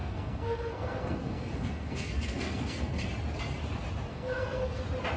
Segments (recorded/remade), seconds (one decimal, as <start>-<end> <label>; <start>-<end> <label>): 0.0-3.1 remade; 3.1-4.1 recorded; 4.1-4.8 remade; 4.8-5.2 recorded